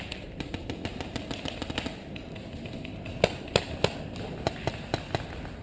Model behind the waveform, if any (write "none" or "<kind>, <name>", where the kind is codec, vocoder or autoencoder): none